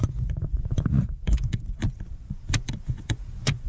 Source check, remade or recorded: remade